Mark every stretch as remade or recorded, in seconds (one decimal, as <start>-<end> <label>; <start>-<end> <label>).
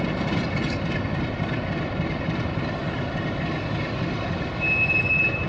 0.0-5.5 recorded